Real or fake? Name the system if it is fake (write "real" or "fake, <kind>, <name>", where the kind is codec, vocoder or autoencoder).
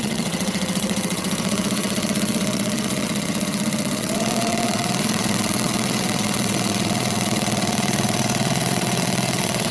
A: fake, vocoder, WaveNeXt